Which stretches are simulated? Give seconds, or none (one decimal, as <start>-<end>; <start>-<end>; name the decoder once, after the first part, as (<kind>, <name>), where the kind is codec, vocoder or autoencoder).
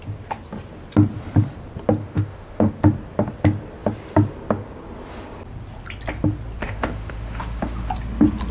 2.0-2.7 (autoencoder, DAC-VAE); 6.6-7.9